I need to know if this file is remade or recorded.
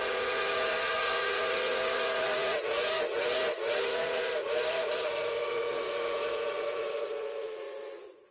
remade